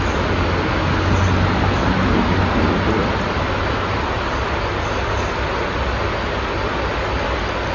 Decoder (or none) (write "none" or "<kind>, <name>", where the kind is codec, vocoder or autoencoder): none